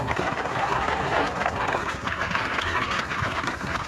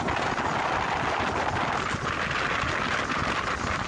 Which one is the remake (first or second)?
first